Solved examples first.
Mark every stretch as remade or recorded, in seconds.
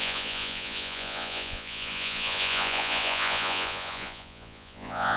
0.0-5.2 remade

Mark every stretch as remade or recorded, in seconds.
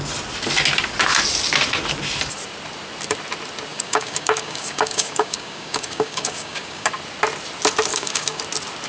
0.0-3.7 recorded; 3.7-6.9 remade; 6.9-7.9 recorded; 7.9-8.4 remade; 8.4-8.9 recorded